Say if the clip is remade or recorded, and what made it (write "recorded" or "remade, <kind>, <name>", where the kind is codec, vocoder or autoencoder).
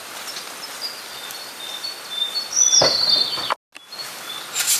recorded